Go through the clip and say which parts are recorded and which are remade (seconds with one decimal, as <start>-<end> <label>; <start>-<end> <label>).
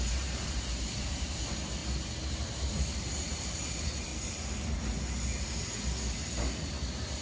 0.0-1.8 remade; 1.8-2.3 recorded; 2.3-4.1 remade; 4.1-6.7 recorded; 6.7-7.2 remade